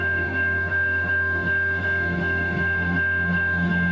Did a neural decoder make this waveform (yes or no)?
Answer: yes